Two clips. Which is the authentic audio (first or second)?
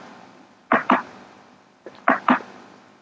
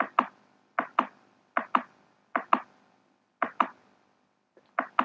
second